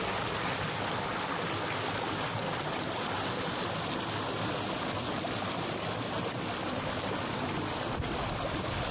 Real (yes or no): yes